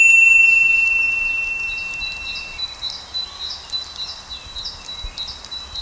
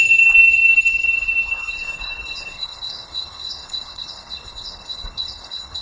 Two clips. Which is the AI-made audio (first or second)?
second